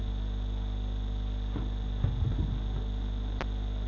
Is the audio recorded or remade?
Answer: recorded